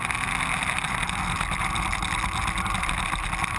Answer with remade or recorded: recorded